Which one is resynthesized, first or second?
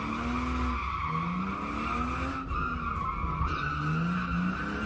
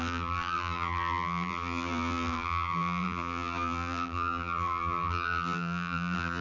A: second